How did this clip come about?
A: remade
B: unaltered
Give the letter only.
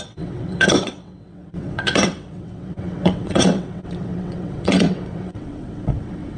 A